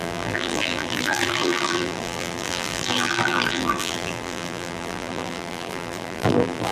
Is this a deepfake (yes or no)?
yes